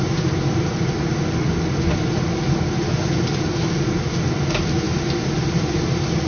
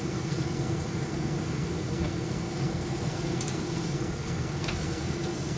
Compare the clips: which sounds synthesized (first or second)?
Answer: second